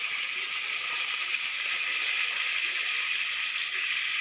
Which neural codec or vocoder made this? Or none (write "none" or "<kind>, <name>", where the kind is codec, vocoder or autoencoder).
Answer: none